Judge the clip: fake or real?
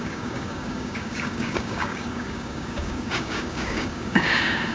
fake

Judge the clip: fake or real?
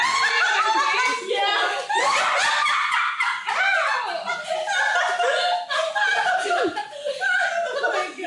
real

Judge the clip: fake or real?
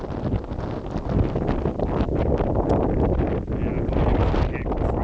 real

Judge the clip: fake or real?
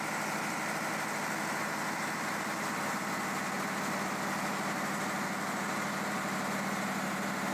real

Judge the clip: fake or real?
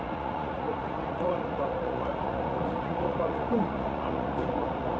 fake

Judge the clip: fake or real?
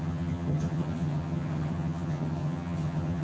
fake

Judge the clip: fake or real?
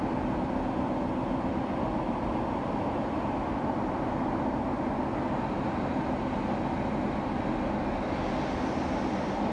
real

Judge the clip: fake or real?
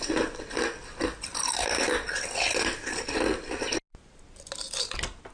real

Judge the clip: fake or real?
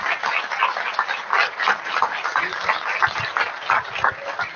real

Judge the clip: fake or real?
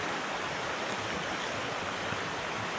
real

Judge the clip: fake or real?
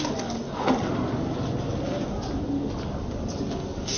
real